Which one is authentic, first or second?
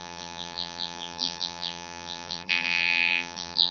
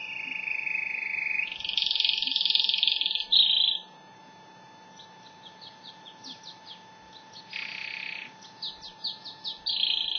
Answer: second